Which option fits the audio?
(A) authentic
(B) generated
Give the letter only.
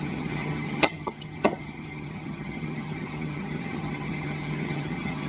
B